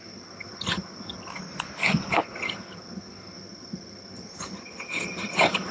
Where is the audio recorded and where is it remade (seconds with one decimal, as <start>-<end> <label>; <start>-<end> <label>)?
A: 0.0-1.3 remade; 1.3-2.2 recorded; 2.2-5.7 remade